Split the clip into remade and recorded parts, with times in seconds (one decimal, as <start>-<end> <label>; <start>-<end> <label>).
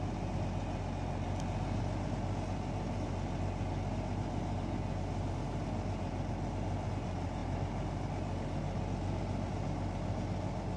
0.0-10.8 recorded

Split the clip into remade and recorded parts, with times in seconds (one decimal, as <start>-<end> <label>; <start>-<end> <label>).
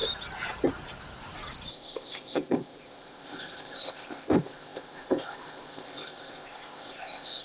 0.0-1.7 recorded; 1.7-7.4 remade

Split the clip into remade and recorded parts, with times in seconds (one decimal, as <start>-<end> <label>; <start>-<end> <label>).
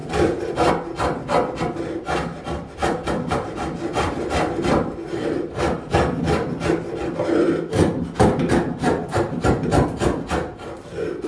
0.0-0.7 remade; 0.7-2.8 recorded; 2.8-5.6 remade; 5.6-11.3 recorded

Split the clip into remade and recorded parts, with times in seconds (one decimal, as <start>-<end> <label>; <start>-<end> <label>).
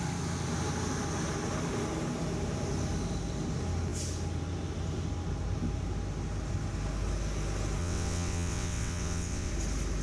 0.0-7.8 recorded; 7.8-9.5 remade; 9.5-10.0 recorded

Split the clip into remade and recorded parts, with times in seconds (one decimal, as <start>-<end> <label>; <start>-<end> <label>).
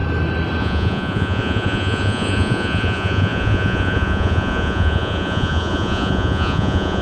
0.0-0.6 recorded; 0.6-7.0 remade